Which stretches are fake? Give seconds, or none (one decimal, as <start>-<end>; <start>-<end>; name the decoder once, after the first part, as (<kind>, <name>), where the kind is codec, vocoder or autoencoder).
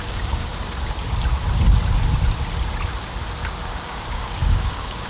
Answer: 0.0-0.5 (codec, DAC); 3.6-5.1